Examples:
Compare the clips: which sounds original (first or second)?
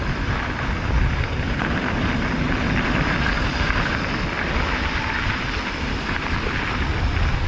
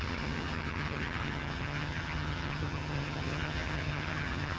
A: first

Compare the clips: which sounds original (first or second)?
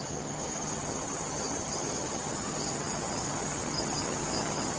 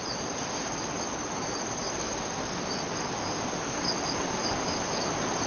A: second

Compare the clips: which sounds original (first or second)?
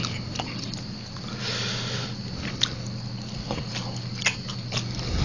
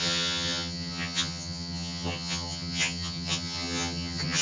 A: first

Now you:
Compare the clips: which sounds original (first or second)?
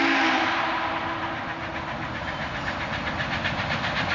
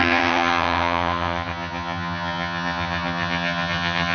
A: first